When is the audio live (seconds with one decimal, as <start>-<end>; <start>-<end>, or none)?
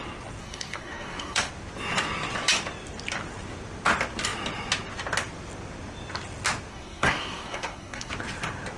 0.0-0.4; 1.5-6.7; 8.1-8.8